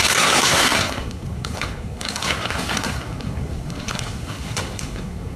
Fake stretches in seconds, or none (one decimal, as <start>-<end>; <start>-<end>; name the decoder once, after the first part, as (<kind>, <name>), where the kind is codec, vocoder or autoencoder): 0.0-5.4 (codec, SNAC)